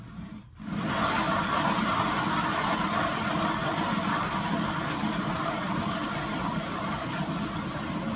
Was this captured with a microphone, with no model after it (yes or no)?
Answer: yes